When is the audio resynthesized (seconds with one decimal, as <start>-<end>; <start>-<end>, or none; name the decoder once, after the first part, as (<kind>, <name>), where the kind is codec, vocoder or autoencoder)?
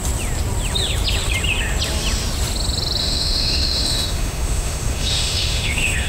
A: 3.0-6.1 (autoencoder, DAC-VAE)